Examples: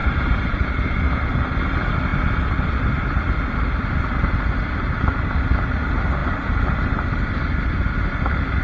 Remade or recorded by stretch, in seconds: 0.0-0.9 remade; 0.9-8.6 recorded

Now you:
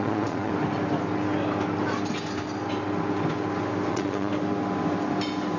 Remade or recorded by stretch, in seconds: 0.0-0.5 remade; 0.5-3.9 recorded; 3.9-4.3 remade; 4.3-5.6 recorded

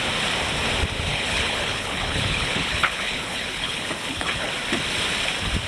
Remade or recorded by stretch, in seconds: 0.0-1.1 recorded; 1.1-4.5 remade; 4.5-5.7 recorded

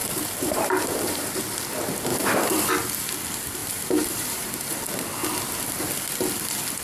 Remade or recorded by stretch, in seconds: 0.0-1.4 remade; 1.4-2.1 recorded; 2.1-2.7 remade; 2.7-3.6 recorded; 3.6-4.5 remade; 4.5-6.8 recorded

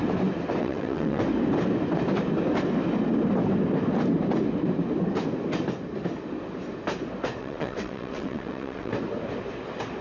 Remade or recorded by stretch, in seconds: 0.0-0.6 recorded; 0.6-1.2 remade; 1.2-7.4 recorded; 7.4-8.9 remade; 8.9-10.0 recorded

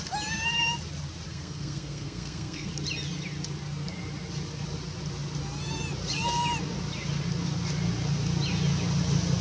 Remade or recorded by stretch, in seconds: 0.0-1.3 recorded; 1.3-2.7 remade; 2.7-9.4 recorded

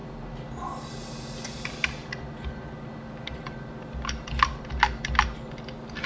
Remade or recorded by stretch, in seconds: 0.0-6.1 recorded